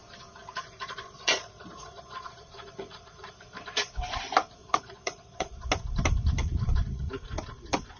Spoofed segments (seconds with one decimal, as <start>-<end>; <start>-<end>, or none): 0.4-3.3; 4.6-5.7; 6.4-7.1